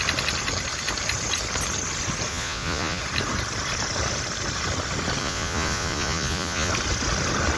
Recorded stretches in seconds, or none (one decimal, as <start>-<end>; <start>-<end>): 0.0-2.3; 3.0-5.2; 6.7-7.6

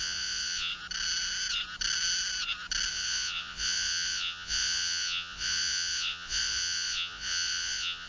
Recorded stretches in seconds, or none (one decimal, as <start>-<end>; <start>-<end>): 0.7-2.9